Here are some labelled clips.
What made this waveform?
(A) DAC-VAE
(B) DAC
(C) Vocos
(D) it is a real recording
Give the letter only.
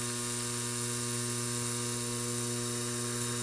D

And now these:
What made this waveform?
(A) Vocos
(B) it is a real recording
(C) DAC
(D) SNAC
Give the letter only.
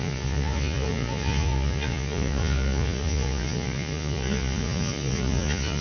A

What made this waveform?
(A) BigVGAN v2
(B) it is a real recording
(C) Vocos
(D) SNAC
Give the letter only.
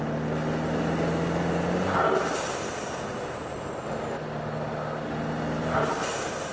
B